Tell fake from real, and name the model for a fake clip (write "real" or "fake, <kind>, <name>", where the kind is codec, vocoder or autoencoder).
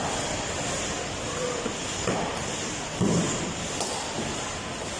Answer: real